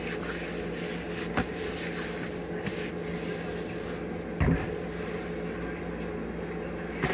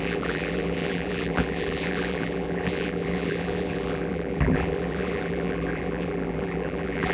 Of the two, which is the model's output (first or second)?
second